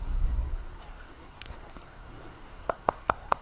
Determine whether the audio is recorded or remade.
remade